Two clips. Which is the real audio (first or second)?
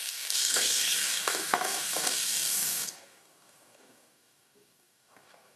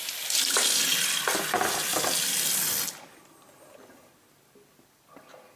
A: second